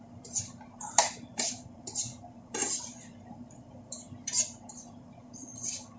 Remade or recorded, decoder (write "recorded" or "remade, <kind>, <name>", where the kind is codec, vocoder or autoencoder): remade, vocoder, BigVGAN v2